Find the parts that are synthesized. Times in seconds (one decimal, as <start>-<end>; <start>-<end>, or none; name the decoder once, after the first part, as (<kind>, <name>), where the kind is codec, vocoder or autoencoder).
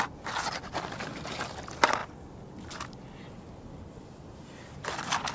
none